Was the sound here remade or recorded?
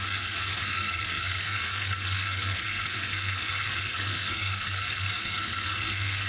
remade